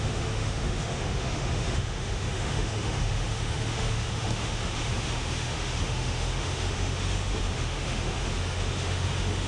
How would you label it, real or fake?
fake